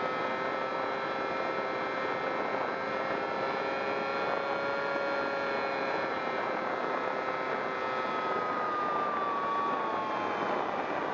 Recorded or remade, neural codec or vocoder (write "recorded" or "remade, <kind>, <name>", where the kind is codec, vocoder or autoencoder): recorded